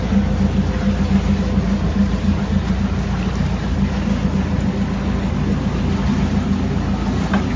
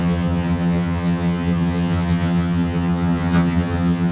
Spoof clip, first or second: second